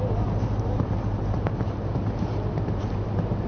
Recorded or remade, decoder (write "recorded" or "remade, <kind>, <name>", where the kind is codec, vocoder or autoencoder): recorded